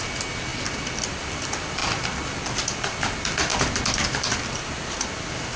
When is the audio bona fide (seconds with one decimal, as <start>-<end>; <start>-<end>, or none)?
0.0-5.6